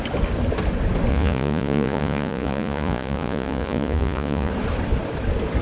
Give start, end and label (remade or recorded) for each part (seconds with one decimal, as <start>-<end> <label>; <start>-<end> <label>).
0.0-1.1 recorded; 1.1-4.5 remade; 4.5-5.6 recorded